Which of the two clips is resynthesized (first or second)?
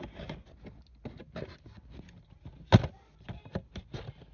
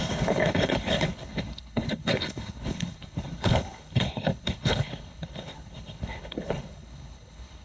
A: second